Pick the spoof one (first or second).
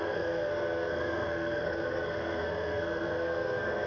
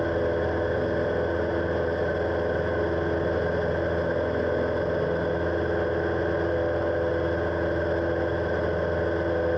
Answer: first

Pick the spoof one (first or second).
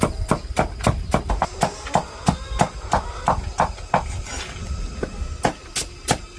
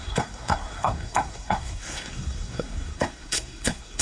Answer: second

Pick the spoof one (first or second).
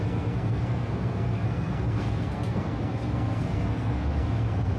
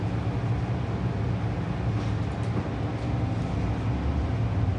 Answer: first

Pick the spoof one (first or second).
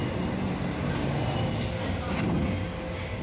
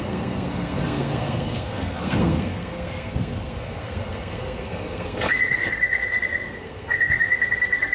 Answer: second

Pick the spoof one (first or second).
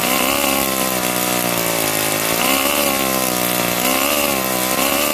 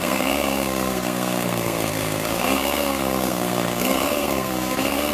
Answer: second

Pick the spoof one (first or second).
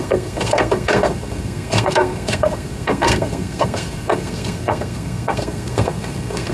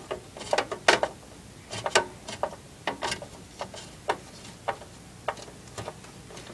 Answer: first